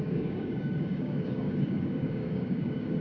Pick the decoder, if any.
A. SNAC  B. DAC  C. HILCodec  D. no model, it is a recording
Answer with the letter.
B